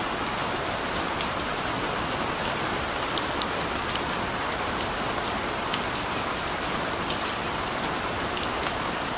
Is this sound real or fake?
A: real